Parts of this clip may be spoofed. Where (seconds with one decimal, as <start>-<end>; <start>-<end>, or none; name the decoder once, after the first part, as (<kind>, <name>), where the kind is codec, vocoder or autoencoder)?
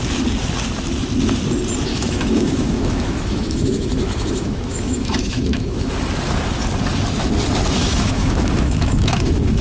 1.9-5.9 (autoencoder, DAC-VAE); 7.8-9.6